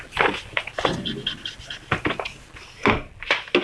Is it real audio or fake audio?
real